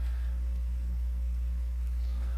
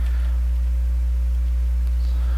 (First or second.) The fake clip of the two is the first